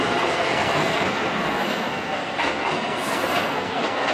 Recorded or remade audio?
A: remade